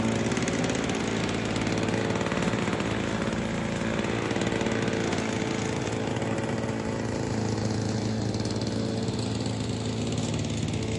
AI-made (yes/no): no